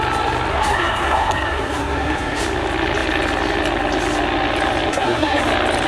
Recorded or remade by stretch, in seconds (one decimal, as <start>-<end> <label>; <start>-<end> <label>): 0.0-0.5 recorded; 0.5-2.4 remade; 2.4-4.9 recorded; 4.9-5.4 remade; 5.4-5.9 recorded